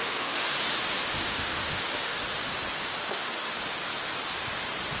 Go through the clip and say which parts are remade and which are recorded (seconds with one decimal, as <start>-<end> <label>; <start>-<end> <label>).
0.0-0.5 remade; 0.5-1.1 recorded; 1.1-2.2 remade; 2.2-3.0 recorded; 3.0-3.5 remade; 3.5-5.0 recorded